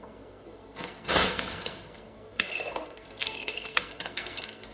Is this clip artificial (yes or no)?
yes